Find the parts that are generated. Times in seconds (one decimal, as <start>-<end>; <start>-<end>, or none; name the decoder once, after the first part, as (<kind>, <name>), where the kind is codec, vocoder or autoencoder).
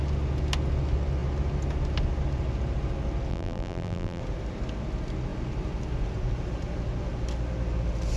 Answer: 3.3-4.2 (vocoder, BigVGAN v2)